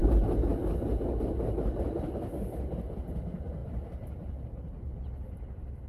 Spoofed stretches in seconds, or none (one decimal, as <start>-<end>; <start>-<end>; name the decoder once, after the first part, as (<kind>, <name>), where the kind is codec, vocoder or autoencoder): none